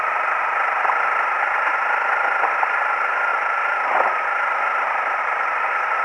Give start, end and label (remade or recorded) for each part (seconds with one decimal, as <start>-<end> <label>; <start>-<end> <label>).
0.0-6.0 recorded